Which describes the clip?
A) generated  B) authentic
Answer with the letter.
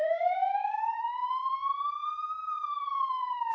A